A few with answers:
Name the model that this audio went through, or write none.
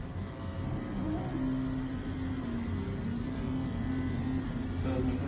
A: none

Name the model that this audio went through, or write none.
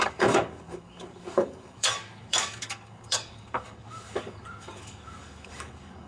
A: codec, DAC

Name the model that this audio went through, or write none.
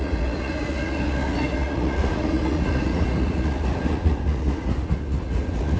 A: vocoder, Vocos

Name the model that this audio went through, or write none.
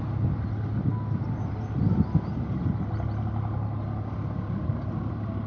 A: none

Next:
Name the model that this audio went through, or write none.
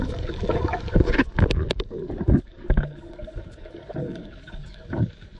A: codec, DAC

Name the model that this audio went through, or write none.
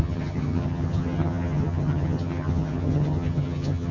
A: vocoder, HiFi-GAN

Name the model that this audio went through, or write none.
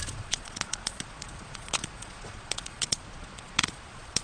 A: vocoder, Vocos